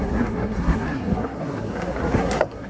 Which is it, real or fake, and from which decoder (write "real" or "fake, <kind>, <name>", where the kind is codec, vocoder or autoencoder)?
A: fake, codec, SNAC